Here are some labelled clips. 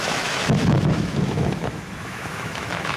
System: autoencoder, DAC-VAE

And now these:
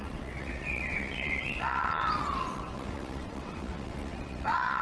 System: vocoder, WaveNeXt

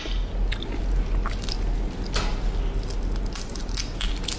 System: none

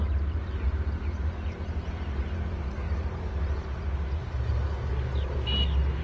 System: none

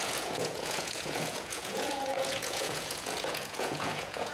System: vocoder, Vocos